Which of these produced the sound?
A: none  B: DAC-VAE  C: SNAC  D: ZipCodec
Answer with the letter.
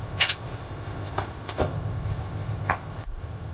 D